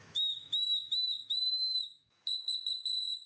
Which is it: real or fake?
fake